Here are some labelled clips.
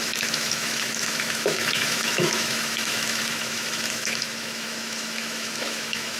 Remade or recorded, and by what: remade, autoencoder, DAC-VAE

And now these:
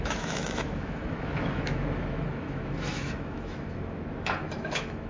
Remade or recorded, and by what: remade, autoencoder, DAC-VAE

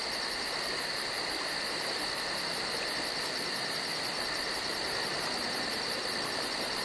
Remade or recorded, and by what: recorded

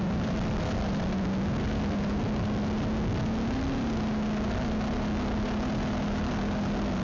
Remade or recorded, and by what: recorded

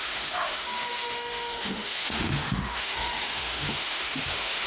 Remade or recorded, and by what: remade, autoencoder, DAC-VAE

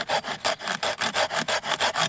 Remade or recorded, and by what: recorded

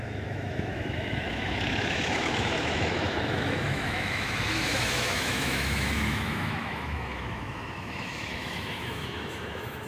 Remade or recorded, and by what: remade, autoencoder, DAC-VAE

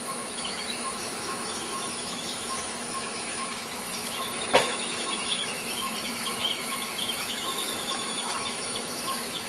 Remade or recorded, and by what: remade, autoencoder, DAC-VAE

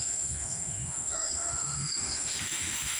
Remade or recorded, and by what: remade, autoencoder, DAC-VAE